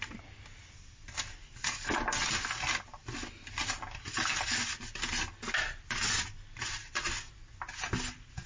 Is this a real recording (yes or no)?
yes